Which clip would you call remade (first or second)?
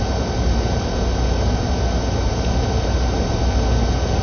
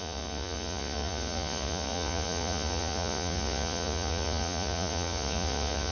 second